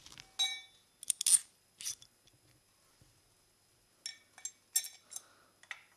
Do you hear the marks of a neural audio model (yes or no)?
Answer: no